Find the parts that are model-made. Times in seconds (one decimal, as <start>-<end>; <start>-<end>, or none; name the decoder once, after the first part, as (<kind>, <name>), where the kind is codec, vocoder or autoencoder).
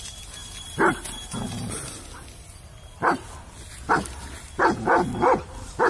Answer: none